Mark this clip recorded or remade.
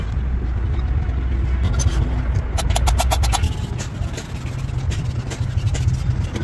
recorded